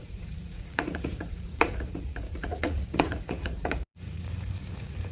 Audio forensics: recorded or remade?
remade